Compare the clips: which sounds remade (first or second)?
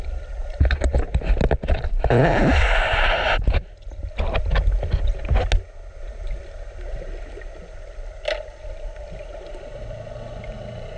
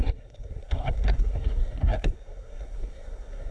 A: second